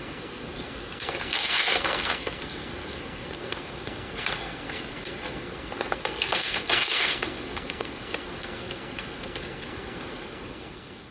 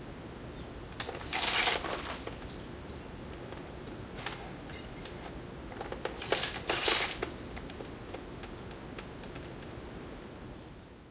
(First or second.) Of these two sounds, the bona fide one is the second